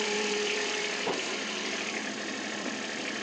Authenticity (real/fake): fake